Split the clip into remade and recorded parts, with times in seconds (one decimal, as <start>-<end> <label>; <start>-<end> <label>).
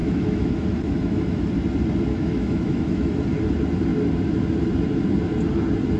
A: 0.0-1.4 remade; 1.4-2.1 recorded; 2.1-3.1 remade; 3.1-6.0 recorded